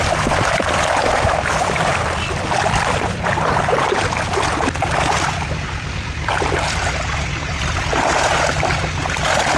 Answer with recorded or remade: recorded